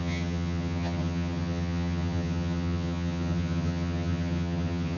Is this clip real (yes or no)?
no